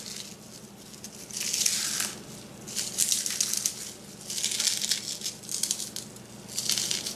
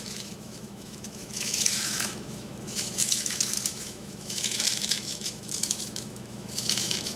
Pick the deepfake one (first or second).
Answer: second